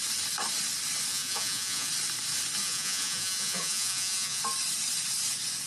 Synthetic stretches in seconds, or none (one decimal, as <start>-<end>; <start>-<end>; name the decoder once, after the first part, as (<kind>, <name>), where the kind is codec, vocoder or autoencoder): 1.1-1.9 (vocoder, Vocos); 2.6-4.4